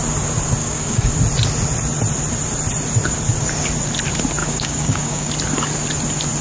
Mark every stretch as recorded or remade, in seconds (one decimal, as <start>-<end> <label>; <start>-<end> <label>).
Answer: 0.0-0.6 recorded; 0.6-1.1 remade; 1.1-4.4 recorded; 4.4-5.3 remade; 5.3-6.4 recorded